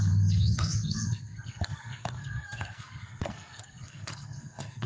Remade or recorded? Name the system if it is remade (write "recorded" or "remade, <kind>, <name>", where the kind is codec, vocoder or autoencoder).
remade, codec, SNAC